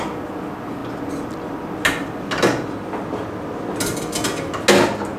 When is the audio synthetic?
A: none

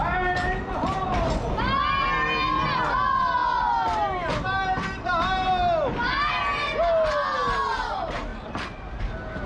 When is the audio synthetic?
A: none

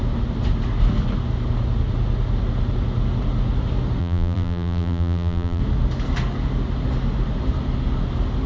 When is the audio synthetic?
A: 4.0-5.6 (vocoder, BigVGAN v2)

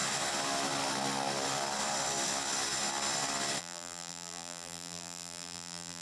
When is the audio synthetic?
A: 3.6-6.0 (vocoder, BigVGAN v2)